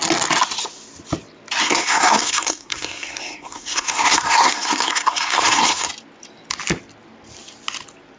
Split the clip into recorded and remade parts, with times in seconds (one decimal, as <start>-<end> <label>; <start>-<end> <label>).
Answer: 0.0-1.6 recorded; 1.6-5.9 remade; 5.9-8.2 recorded

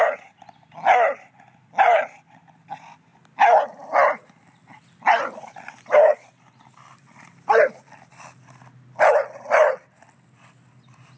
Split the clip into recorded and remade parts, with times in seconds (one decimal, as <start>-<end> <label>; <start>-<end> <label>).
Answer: 0.0-11.2 recorded